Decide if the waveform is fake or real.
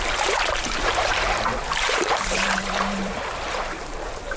fake